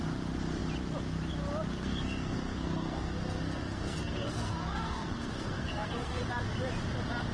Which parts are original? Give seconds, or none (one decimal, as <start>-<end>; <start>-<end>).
0.0-1.8; 6.2-7.3